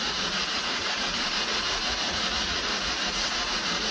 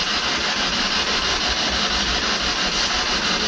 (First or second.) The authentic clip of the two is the second